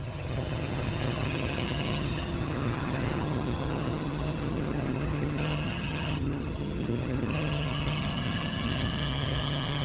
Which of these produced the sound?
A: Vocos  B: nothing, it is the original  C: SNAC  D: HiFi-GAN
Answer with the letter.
D